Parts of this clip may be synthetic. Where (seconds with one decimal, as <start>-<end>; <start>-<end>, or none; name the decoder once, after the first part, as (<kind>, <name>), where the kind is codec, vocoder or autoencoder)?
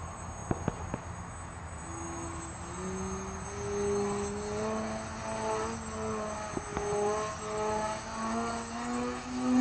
none